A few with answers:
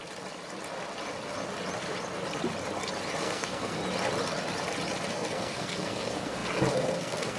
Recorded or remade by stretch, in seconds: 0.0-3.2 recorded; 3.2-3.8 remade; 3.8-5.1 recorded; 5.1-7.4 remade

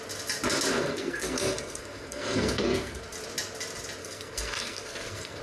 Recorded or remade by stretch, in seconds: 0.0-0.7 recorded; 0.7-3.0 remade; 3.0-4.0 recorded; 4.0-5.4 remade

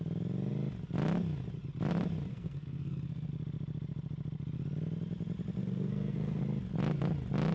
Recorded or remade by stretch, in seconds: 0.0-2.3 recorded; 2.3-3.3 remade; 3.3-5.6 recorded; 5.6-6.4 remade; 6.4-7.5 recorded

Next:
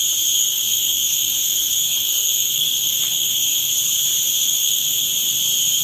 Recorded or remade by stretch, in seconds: 0.0-0.4 recorded; 0.4-3.7 remade; 3.7-4.4 recorded; 4.4-4.9 remade; 4.9-5.8 recorded

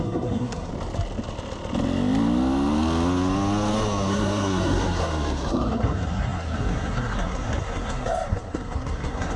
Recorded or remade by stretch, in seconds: 0.0-0.7 remade; 0.7-4.1 recorded; 4.1-9.4 remade

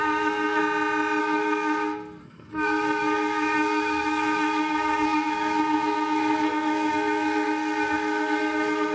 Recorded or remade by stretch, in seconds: 0.0-0.6 remade; 0.6-1.2 recorded; 1.2-8.9 remade

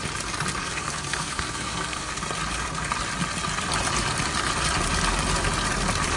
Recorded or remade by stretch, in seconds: 0.0-0.6 recorded; 0.6-2.1 remade; 2.1-6.2 recorded